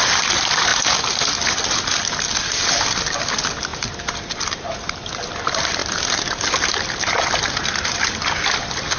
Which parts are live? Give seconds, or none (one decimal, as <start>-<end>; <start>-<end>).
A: 0.0-3.7; 4.9-5.8; 6.7-9.0